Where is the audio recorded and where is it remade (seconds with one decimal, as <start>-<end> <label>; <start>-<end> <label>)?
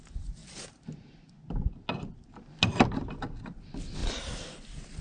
0.0-5.0 recorded